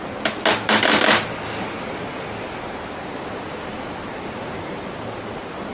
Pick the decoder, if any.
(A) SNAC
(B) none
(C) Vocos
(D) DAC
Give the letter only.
B